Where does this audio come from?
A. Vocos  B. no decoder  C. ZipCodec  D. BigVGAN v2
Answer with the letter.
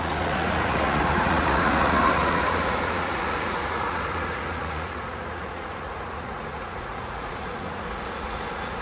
A